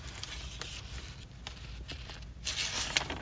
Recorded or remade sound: recorded